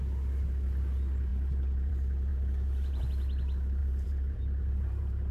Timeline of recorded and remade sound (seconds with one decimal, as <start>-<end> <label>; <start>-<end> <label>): 0.0-1.3 recorded; 1.3-1.9 remade; 1.9-2.3 recorded; 2.3-3.0 remade; 3.0-3.8 recorded; 3.8-5.3 remade